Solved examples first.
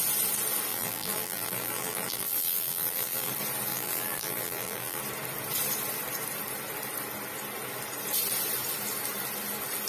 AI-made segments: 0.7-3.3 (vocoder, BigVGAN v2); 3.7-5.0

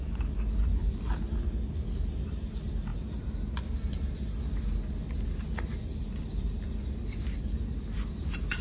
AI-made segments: none

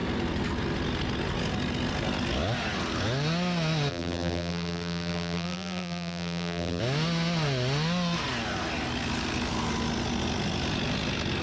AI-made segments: 3.9-6.8 (vocoder, BigVGAN v2)

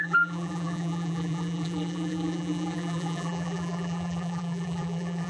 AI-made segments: 0.0-5.3 (vocoder, BigVGAN v2)

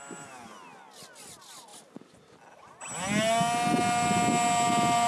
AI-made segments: none

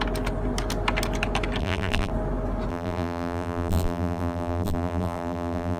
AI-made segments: 1.6-2.1 (vocoder, BigVGAN v2); 2.7-5.8